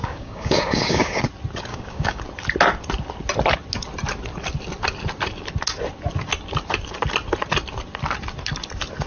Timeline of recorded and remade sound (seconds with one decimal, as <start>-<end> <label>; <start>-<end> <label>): 0.0-1.2 remade; 1.2-1.7 recorded; 1.7-2.2 remade; 2.2-9.1 recorded